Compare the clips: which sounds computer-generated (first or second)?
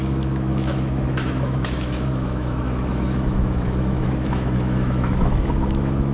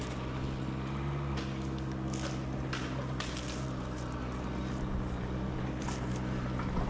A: first